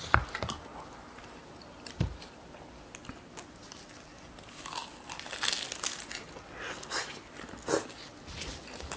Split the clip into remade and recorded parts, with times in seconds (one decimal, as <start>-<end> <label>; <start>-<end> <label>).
0.0-9.0 recorded